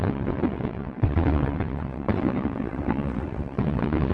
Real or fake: fake